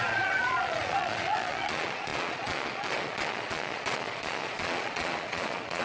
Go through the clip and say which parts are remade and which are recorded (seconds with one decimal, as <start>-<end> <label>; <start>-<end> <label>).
0.0-5.8 remade